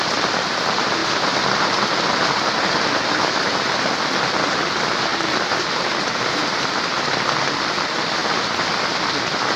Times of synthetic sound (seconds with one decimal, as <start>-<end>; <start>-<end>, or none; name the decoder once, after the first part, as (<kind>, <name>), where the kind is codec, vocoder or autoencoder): none